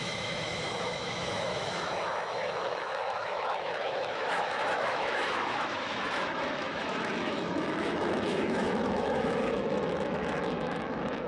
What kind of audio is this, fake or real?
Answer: fake